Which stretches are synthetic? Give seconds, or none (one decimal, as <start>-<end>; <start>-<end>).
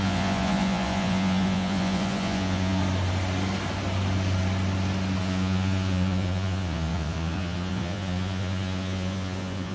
0.0-2.8; 5.2-9.7